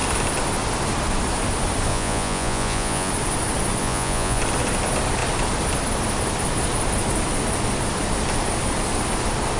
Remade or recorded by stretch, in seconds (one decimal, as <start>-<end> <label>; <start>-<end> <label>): 0.0-1.9 recorded; 1.9-3.1 remade; 3.1-3.8 recorded; 3.8-4.4 remade; 4.4-9.6 recorded